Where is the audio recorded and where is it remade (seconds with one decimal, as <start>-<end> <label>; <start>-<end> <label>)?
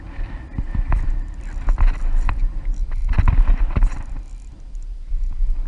0.0-3.0 recorded; 3.0-4.1 remade; 4.1-5.7 recorded